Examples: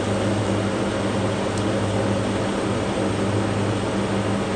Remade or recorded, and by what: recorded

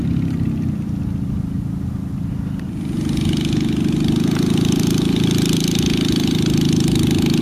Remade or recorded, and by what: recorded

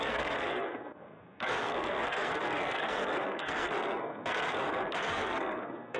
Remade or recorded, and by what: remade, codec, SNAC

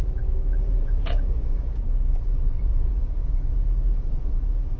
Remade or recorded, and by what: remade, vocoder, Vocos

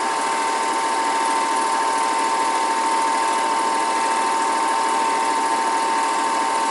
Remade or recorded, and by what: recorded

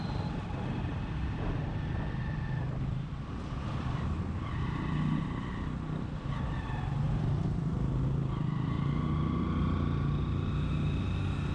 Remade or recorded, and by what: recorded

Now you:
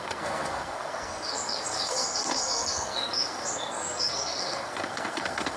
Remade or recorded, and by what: remade, codec, SNAC